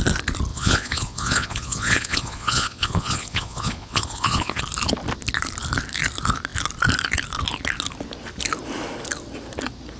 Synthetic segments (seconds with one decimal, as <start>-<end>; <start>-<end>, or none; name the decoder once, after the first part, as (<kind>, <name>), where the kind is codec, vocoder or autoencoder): 0.5-4.6 (vocoder, Vocos)